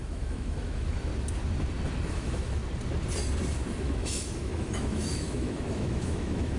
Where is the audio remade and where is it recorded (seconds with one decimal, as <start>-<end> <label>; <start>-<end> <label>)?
0.0-1.1 remade; 1.1-2.1 recorded; 2.1-2.6 remade; 2.6-3.8 recorded; 3.8-6.6 remade